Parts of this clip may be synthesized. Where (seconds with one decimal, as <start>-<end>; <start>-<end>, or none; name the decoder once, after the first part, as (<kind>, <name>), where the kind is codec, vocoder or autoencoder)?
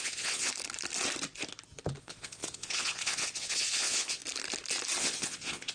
0.0-0.5 (vocoder, Vocos); 2.0-4.2; 5.0-5.7